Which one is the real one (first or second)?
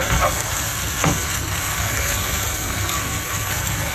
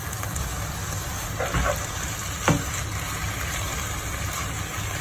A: second